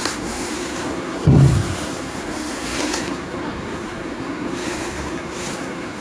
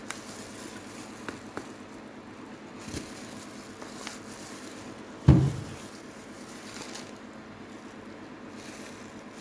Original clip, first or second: second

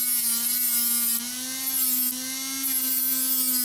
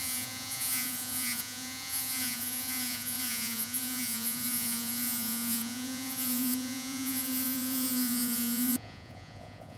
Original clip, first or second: first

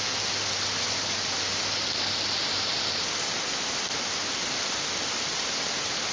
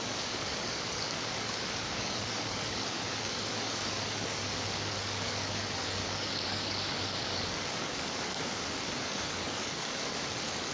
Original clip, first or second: first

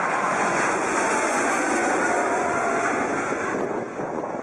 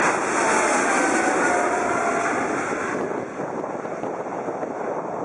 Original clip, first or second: second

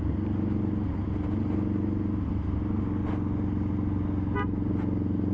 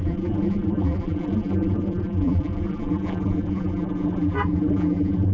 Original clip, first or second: first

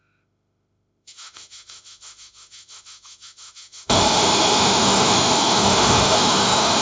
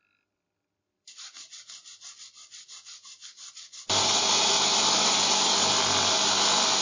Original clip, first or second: second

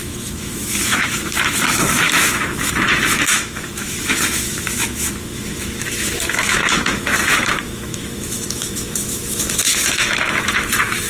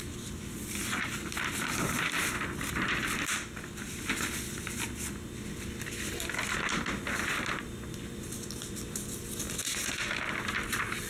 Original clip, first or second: second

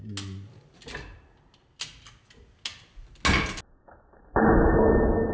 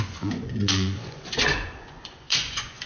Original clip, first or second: first